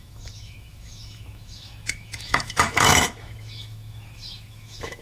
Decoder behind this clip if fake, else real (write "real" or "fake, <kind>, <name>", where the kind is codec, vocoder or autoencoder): fake, autoencoder, DAC-VAE